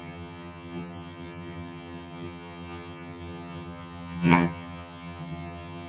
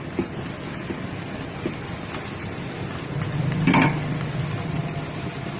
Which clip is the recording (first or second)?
second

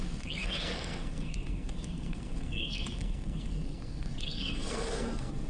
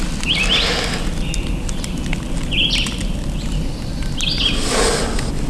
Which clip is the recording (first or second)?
second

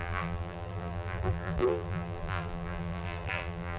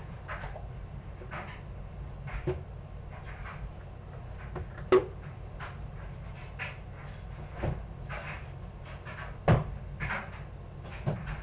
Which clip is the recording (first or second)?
second